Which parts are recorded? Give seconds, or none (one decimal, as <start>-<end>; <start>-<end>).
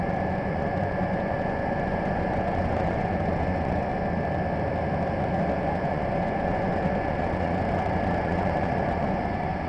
3.9-5.7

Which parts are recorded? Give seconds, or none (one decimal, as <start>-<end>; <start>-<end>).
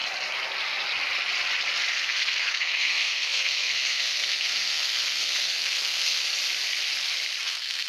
0.0-1.9; 6.2-7.4